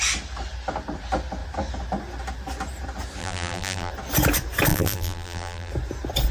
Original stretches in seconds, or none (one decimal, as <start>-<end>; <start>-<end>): 0.0-3.2; 3.9-4.7; 5.7-6.3